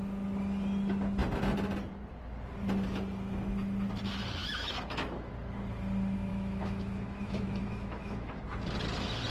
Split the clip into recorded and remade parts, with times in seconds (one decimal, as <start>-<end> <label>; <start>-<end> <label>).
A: 0.0-4.4 recorded; 4.4-5.3 remade; 5.3-6.3 recorded; 6.3-8.4 remade; 8.4-9.3 recorded